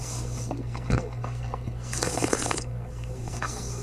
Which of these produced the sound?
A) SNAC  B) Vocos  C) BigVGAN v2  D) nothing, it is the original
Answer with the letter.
A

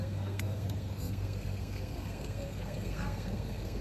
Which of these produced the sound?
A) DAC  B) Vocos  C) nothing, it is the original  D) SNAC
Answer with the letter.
D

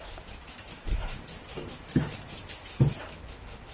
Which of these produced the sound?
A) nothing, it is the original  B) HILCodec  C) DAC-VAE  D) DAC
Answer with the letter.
C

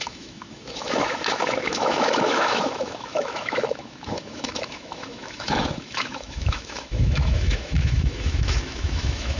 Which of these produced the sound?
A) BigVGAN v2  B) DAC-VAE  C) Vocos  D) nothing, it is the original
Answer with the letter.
B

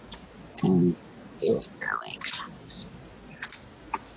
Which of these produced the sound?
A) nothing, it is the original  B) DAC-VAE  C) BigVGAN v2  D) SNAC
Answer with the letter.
A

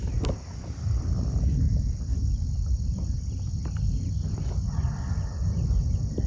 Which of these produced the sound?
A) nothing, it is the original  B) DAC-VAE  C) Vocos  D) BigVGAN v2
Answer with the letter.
A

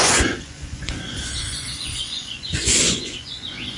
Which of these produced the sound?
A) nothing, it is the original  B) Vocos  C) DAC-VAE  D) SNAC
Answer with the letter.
B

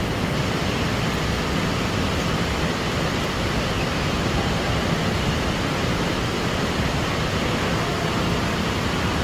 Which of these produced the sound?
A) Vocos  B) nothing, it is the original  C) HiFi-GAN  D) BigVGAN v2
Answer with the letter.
B